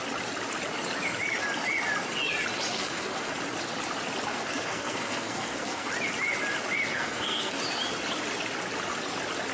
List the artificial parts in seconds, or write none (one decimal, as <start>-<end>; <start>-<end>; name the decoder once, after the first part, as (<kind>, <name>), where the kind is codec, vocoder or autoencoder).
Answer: 2.7-3.3 (codec, SNAC); 4.3-5.9; 6.9-7.6